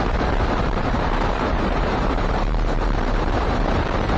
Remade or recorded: remade